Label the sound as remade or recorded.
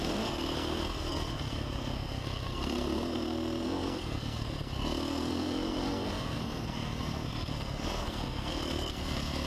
remade